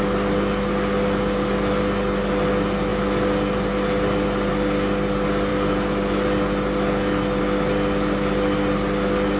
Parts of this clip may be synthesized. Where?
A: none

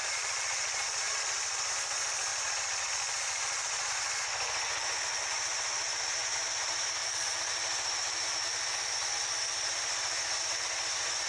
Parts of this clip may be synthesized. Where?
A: 0.0-1.7 (vocoder, Vocos); 2.3-3.9; 7.0-7.5

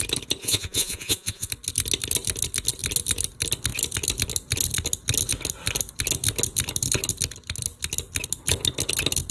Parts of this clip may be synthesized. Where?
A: 0.4-1.5 (vocoder, Vocos)

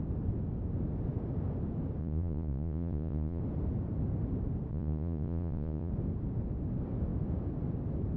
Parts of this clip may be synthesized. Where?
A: 2.0-3.4 (vocoder, Vocos); 4.7-5.9